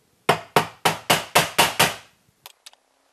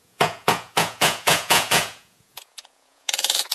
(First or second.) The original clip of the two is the first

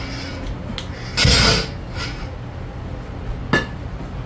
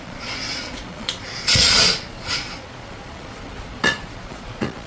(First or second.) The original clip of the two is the first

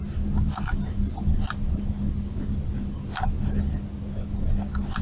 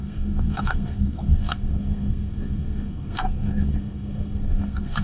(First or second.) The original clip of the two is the first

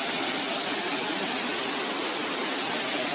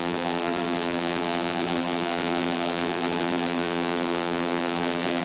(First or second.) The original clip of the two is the first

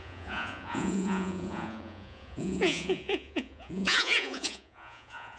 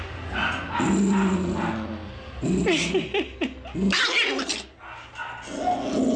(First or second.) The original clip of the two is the second